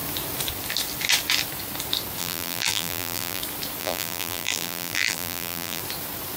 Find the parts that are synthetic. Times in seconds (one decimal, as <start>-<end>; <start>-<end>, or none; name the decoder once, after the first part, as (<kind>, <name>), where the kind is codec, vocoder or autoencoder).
2.2-3.4 (vocoder, BigVGAN v2); 3.8-5.8